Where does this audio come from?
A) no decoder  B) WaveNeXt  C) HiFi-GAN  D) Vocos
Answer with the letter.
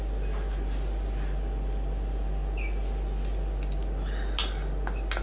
A